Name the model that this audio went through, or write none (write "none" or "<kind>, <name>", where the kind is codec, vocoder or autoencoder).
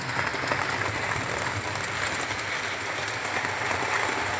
none